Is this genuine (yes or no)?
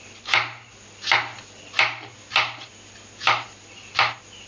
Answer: yes